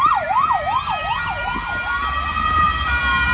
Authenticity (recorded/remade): recorded